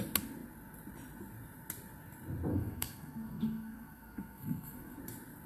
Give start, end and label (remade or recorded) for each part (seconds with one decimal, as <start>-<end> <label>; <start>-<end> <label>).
0.0-2.5 recorded; 2.5-5.0 remade; 5.0-5.5 recorded